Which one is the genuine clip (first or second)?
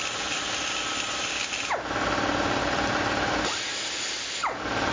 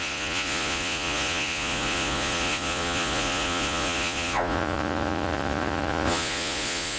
first